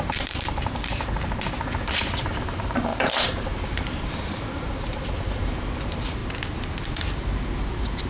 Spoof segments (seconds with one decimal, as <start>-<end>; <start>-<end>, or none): 0.0-0.9; 2.3-6.2